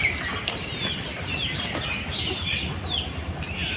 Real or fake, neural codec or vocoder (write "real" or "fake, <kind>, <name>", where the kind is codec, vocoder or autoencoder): real